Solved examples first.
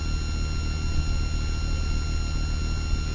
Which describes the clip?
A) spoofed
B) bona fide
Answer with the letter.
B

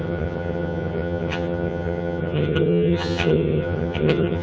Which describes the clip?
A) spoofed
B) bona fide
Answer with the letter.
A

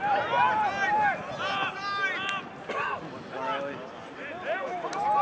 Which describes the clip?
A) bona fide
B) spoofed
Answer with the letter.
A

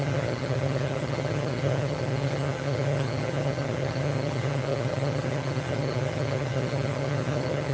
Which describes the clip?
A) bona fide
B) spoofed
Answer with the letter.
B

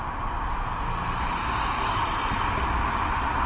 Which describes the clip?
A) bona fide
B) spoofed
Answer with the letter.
A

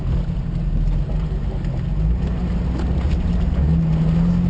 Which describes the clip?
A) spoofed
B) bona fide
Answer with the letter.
B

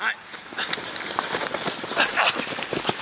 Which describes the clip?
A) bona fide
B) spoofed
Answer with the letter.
A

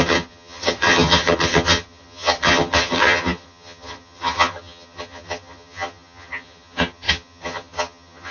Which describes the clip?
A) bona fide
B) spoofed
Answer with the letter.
B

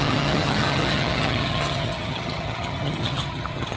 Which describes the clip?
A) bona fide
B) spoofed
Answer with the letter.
B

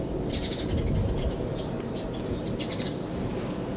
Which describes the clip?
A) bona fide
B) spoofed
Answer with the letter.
A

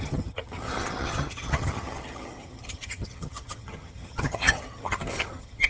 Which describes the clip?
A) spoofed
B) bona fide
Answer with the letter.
A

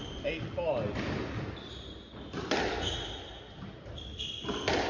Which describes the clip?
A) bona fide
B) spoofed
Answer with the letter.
A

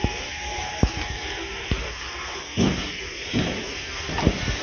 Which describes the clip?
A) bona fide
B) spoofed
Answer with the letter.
A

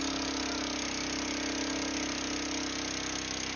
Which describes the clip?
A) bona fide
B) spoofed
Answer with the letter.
A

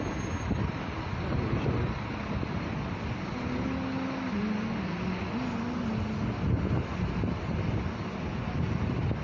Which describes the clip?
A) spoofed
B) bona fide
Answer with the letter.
B